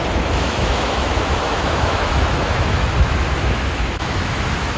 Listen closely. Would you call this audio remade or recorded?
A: remade